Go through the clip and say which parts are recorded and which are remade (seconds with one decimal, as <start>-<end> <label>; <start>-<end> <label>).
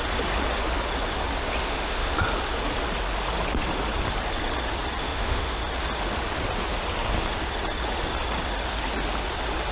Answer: 0.0-1.6 recorded; 1.6-2.1 remade; 2.1-5.0 recorded; 5.0-5.6 remade; 5.6-9.7 recorded